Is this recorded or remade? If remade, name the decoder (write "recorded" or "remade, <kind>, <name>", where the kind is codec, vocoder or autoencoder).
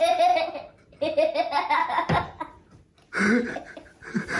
recorded